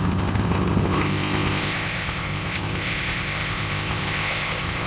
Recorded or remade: remade